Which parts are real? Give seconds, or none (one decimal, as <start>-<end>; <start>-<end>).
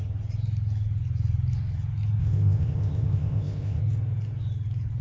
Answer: 0.0-2.2; 3.8-5.0